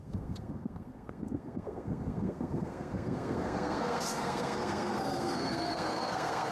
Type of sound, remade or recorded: remade